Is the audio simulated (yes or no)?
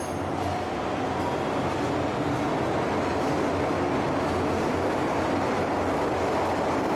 no